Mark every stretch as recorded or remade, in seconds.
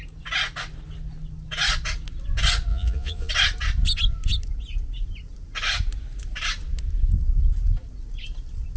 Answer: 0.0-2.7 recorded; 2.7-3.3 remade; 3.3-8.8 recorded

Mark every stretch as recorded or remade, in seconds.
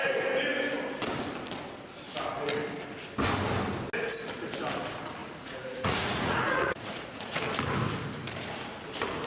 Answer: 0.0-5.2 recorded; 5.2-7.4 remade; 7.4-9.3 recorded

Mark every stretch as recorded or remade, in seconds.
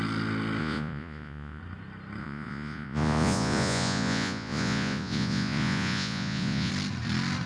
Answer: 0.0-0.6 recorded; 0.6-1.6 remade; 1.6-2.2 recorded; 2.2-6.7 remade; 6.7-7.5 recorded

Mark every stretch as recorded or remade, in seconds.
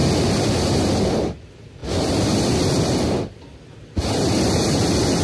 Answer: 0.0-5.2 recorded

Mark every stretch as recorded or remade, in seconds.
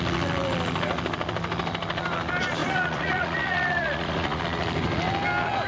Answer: 0.0-2.6 recorded; 2.6-4.4 remade; 4.4-5.7 recorded